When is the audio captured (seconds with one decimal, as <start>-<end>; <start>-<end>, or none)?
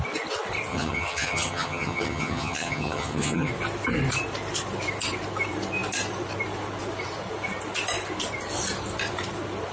0.0-0.7; 3.5-9.7